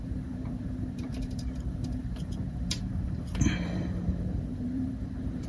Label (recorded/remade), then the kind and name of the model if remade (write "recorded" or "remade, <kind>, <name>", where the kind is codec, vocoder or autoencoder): remade, vocoder, BigVGAN v2